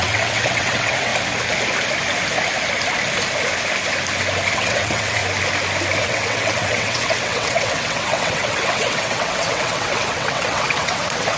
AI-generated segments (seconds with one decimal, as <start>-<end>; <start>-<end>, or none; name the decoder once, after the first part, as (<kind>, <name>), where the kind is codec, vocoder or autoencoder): 0.0-1.1 (vocoder, WaveNeXt); 4.5-5.2; 6.0-11.4